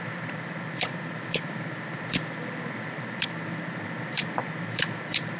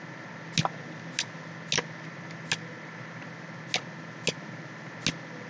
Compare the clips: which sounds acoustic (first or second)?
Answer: second